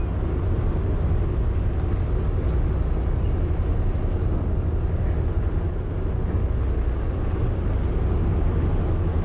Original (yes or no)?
yes